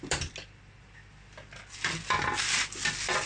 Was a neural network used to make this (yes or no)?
no